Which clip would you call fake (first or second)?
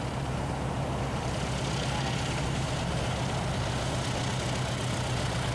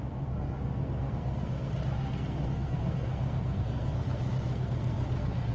second